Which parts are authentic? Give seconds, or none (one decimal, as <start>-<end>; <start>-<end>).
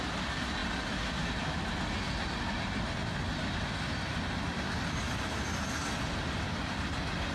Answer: 0.0-7.3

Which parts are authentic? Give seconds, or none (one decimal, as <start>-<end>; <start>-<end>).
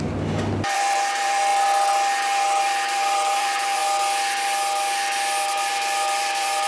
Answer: 1.5-2.6; 3.8-5.7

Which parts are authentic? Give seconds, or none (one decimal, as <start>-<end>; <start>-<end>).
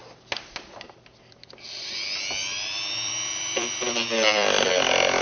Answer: 0.0-2.4; 4.7-5.2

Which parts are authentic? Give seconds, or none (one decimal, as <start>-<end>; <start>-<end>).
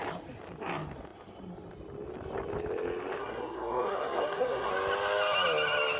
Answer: 0.0-3.2; 4.7-6.0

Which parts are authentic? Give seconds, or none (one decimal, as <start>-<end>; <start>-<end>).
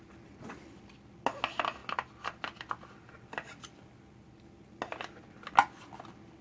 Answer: 0.0-6.4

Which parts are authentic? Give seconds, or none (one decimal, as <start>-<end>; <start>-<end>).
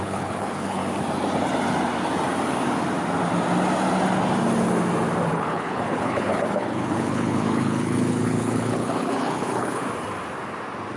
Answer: 0.8-5.3; 9.8-11.0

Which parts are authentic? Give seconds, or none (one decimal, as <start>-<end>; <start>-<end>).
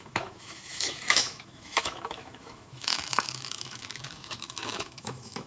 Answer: none